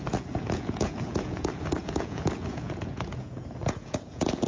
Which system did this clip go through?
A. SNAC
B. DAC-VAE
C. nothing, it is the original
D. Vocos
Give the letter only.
D